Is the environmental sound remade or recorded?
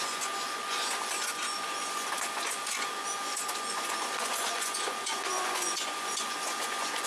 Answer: remade